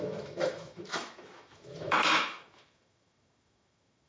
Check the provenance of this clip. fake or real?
fake